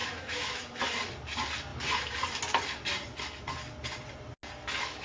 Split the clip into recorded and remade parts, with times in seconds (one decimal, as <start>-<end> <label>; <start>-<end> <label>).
0.0-0.8 remade; 0.8-5.0 recorded